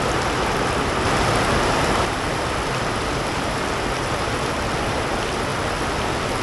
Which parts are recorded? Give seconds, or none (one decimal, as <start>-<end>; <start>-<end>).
0.0-1.3; 4.7-5.5